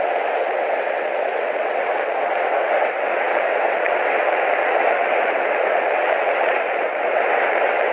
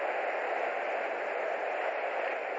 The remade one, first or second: first